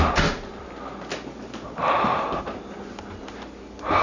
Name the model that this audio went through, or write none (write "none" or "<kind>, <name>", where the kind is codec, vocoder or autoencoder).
none